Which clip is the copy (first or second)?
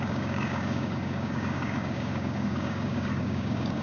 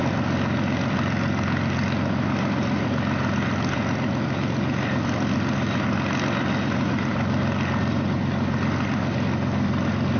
first